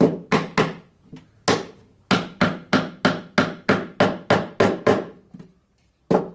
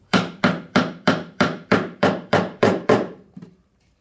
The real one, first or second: first